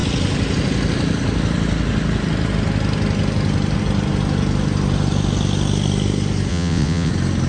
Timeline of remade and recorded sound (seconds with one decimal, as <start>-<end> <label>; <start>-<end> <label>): 0.0-6.5 recorded; 6.5-7.1 remade; 7.1-7.5 recorded